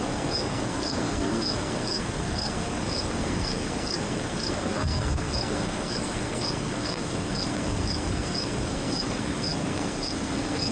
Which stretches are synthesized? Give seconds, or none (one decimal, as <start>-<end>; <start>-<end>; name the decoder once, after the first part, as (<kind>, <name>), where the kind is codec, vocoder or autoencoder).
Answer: 0.0-10.7 (codec, SNAC)